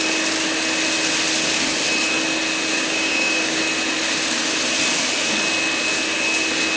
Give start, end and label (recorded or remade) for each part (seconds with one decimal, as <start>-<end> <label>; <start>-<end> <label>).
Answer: 0.0-2.7 recorded; 2.7-3.6 remade; 3.6-6.8 recorded